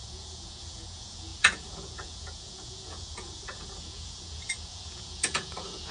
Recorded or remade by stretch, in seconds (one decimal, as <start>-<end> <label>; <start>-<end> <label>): 0.0-5.9 remade